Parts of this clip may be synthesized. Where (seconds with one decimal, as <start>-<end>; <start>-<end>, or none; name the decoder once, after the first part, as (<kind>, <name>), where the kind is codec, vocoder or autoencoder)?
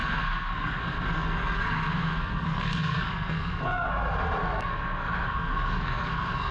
0.0-3.9 (codec, SNAC); 4.4-6.5